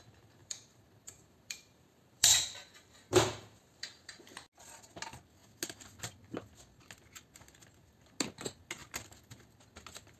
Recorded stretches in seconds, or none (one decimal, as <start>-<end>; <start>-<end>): 0.0-0.4; 4.2-10.2